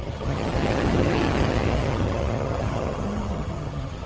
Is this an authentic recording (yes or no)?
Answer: no